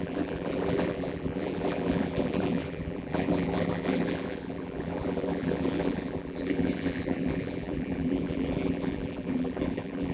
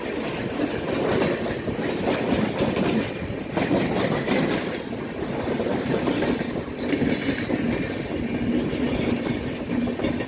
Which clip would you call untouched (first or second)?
second